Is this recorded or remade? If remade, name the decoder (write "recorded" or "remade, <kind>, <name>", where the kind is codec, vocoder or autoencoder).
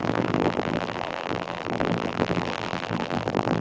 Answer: remade, vocoder, BigVGAN v2